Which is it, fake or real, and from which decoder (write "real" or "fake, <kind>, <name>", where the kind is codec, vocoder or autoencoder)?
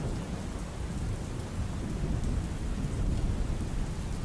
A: real